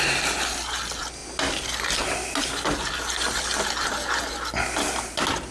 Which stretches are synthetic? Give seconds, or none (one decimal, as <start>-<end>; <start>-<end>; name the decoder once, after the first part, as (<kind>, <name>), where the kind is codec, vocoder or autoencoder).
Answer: none